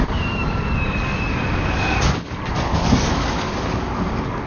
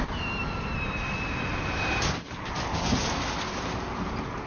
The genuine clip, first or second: second